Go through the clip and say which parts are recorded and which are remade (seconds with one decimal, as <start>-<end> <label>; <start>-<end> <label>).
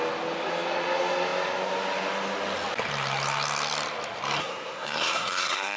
0.0-4.4 recorded; 4.4-5.8 remade